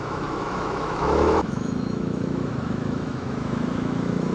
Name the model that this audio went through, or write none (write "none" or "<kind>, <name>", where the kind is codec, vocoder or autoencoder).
autoencoder, DAC-VAE